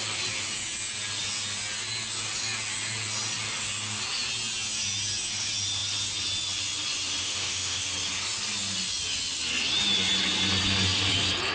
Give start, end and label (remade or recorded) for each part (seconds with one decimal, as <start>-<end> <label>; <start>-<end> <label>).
0.0-7.2 recorded; 7.2-7.8 remade; 7.8-11.5 recorded